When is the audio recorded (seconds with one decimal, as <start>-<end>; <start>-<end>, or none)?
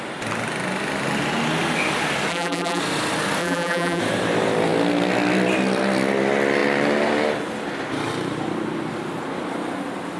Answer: 0.0-2.3; 2.8-3.4; 4.0-10.2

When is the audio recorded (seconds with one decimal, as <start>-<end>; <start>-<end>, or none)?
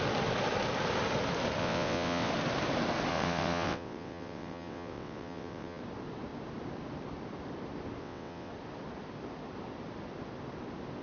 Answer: 0.0-1.6; 2.3-3.1; 5.8-8.0; 8.5-11.0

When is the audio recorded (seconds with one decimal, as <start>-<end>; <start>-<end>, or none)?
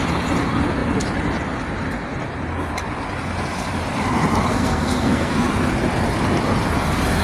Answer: 0.0-4.5; 5.5-7.2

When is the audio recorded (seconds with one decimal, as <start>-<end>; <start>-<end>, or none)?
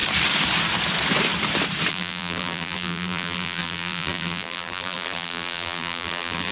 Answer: 0.0-1.9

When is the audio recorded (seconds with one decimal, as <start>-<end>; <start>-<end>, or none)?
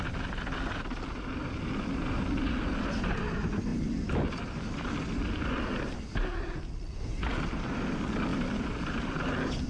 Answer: 0.0-9.7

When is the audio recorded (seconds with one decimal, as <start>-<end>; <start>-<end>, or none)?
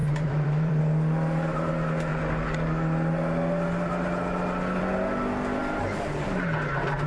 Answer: 0.8-7.1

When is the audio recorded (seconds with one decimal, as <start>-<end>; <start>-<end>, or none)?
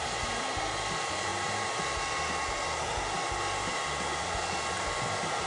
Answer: 0.0-5.5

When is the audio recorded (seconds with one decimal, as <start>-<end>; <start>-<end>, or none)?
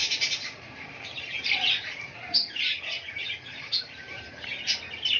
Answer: 4.3-5.2